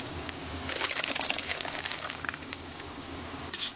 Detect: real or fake fake